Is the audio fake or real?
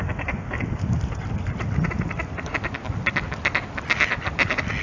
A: real